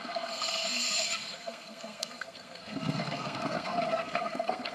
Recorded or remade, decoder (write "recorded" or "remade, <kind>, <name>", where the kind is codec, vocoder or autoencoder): remade, codec, SNAC